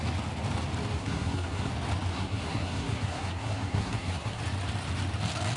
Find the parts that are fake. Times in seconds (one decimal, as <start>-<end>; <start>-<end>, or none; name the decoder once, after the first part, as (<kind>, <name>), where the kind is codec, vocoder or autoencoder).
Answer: 1.0-1.7 (codec, SNAC); 2.1-4.4